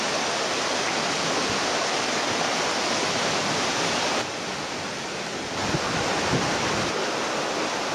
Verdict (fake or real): real